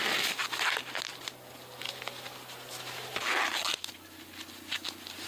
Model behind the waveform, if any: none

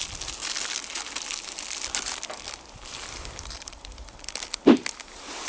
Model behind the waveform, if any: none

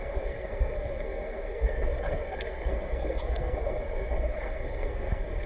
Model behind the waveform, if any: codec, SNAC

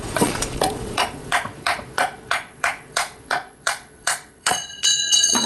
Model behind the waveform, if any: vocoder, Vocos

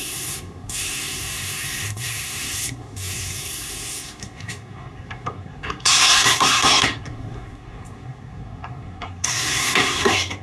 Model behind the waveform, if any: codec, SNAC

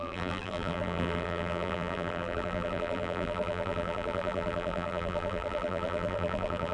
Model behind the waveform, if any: vocoder, BigVGAN v2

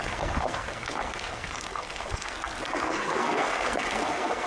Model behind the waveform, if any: codec, SNAC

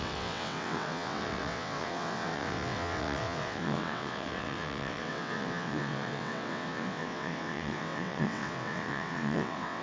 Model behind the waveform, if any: vocoder, WaveNeXt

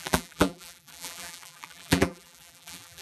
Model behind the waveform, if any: vocoder, BigVGAN v2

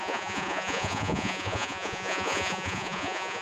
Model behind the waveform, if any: vocoder, Vocos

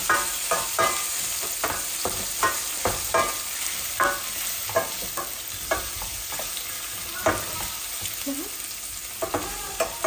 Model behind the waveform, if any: none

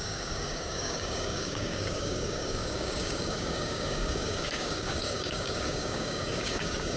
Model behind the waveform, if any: codec, DAC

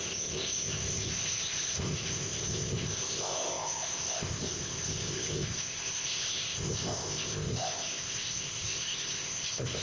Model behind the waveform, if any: codec, ZipCodec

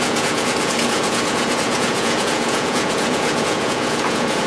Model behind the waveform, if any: vocoder, Vocos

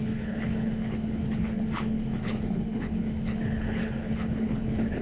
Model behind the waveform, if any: codec, HILCodec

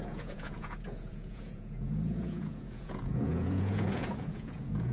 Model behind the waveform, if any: vocoder, Vocos